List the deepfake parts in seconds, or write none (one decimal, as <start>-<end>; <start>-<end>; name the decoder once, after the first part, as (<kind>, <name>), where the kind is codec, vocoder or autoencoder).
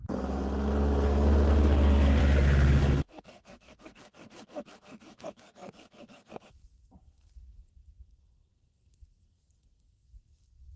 0.0-2.2 (codec, SNAC); 2.8-10.8